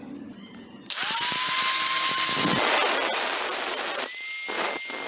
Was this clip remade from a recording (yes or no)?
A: no